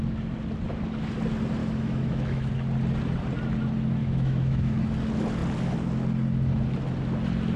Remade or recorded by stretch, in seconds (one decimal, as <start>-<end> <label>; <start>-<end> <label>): 0.0-1.6 recorded; 1.6-2.5 remade; 2.5-4.0 recorded; 4.0-4.8 remade; 4.8-7.6 recorded

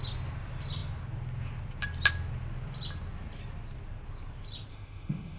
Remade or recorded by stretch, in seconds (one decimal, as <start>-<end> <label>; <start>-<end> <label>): 0.0-4.7 recorded; 4.7-5.4 remade

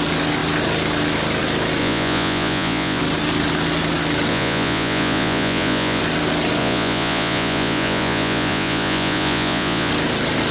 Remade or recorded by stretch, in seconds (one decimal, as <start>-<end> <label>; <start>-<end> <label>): 0.0-1.8 recorded; 1.8-3.0 remade; 3.0-4.3 recorded; 4.3-6.0 remade; 6.0-6.6 recorded; 6.6-9.9 remade; 9.9-10.5 recorded